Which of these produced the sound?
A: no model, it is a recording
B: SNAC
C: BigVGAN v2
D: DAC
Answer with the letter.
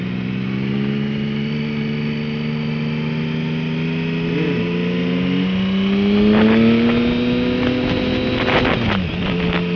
A